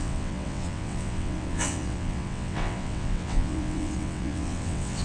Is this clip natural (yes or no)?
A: no